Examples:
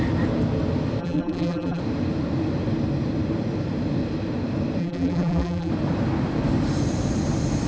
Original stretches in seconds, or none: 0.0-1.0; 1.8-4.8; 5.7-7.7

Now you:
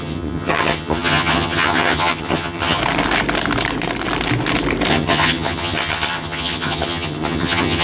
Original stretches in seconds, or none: 2.8-4.9

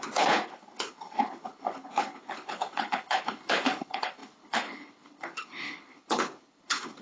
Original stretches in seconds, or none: none

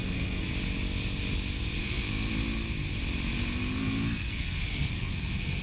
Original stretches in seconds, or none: 0.5-1.8; 2.3-3.8